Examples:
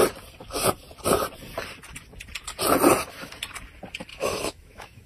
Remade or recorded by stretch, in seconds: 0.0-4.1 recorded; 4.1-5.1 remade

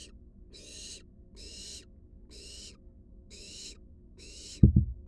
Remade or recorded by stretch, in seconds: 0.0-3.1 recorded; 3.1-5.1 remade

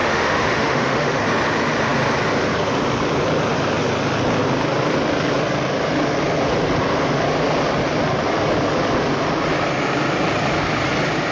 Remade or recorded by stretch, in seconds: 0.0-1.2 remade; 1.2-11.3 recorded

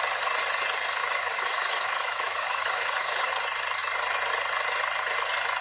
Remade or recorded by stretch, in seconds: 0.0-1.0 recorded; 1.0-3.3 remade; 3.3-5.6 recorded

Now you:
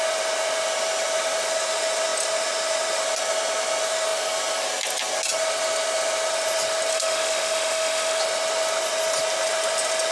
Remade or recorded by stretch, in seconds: 0.0-6.9 recorded; 6.9-8.2 remade; 8.2-10.1 recorded

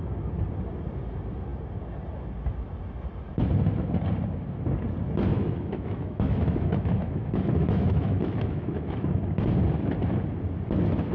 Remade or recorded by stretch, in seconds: 0.0-5.3 recorded; 5.3-9.2 remade; 9.2-11.1 recorded

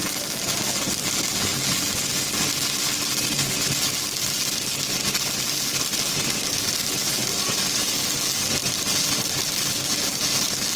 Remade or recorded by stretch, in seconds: 0.0-10.8 recorded